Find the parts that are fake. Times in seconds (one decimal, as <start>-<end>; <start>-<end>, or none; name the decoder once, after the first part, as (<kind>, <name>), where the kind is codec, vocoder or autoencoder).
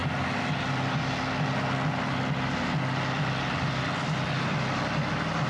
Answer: none